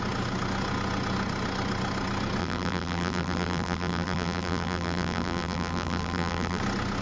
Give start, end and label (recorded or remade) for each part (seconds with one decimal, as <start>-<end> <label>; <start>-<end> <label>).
0.0-2.4 recorded; 2.4-6.6 remade; 6.6-7.0 recorded